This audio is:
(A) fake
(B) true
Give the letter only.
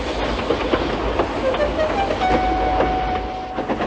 B